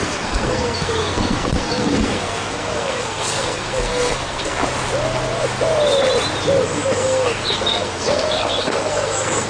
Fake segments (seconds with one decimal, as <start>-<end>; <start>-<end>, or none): 0.0-4.6; 6.6-9.5